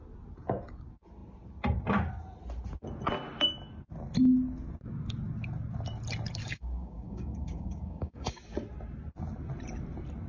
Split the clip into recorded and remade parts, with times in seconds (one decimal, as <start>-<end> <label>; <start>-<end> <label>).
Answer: 0.0-6.4 recorded; 6.4-8.4 remade; 8.4-10.3 recorded